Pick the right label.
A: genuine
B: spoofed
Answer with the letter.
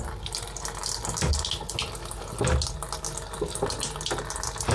A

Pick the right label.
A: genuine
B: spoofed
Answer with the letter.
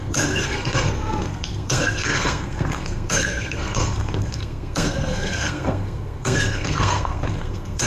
B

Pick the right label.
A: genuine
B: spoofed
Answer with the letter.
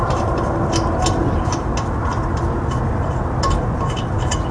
A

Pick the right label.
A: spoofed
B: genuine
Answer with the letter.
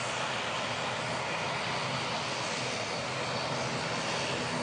B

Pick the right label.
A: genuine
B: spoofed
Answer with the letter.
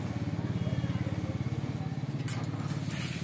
A